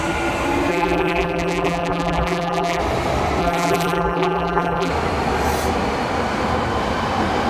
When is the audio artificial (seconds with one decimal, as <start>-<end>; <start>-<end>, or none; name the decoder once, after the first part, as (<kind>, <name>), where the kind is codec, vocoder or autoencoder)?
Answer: 0.7-2.8 (vocoder, BigVGAN v2); 3.4-4.9